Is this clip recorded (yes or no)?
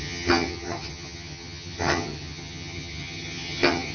no